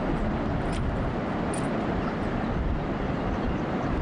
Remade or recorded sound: recorded